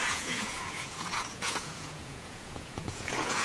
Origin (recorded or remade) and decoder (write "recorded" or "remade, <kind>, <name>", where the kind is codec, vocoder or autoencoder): remade, vocoder, Vocos